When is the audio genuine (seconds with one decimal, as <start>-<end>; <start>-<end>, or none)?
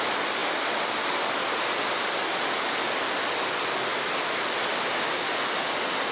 0.0-6.1